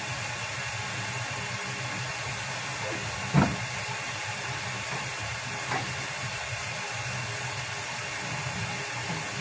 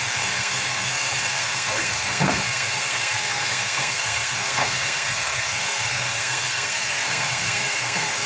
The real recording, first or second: first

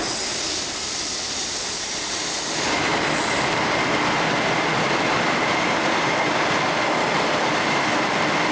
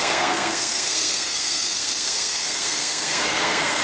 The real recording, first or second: first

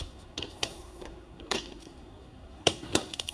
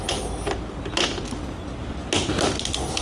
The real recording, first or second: second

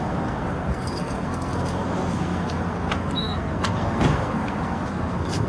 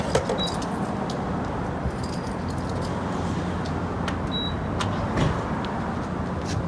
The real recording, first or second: second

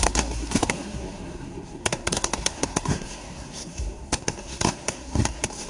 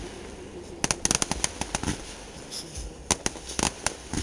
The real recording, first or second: second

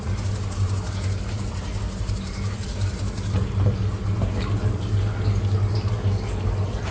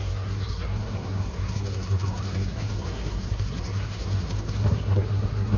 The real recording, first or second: first